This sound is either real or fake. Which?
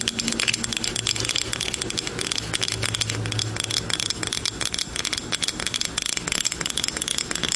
real